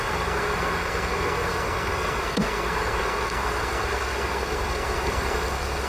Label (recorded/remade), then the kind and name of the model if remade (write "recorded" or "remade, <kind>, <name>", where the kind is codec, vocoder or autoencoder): remade, codec, SNAC